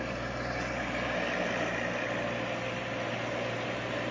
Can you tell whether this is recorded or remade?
recorded